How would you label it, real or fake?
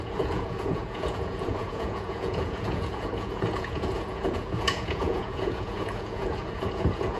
fake